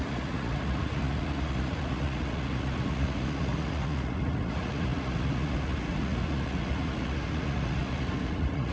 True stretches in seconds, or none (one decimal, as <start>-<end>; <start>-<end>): none